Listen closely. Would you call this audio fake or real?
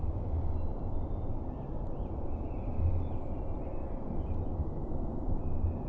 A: real